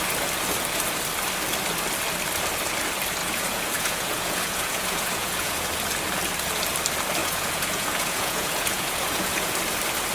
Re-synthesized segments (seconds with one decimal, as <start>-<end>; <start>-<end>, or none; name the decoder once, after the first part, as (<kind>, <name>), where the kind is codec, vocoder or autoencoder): 3.2-5.7 (vocoder, Vocos); 7.2-9.6